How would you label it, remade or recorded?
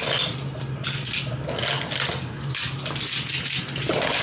recorded